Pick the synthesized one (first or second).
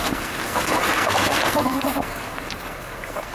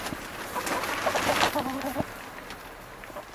first